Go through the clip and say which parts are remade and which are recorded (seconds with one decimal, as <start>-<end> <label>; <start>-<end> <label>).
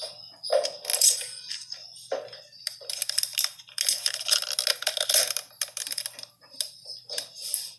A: 0.0-7.8 recorded